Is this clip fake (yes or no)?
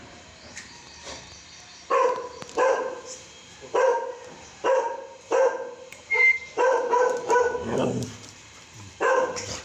yes